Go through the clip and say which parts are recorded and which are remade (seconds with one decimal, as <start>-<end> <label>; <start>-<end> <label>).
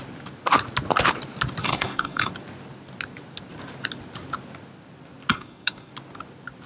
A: 0.0-1.6 recorded; 1.6-2.3 remade; 2.3-5.3 recorded; 5.3-5.9 remade; 5.9-6.7 recorded